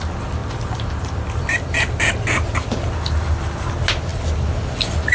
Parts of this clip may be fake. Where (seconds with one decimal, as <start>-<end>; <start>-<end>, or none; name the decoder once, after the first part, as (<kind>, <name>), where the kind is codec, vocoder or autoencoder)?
none